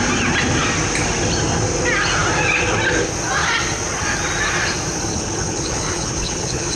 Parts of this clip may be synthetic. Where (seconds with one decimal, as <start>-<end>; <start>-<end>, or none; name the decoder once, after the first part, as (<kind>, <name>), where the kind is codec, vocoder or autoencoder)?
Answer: 5.1-6.8 (codec, HILCodec)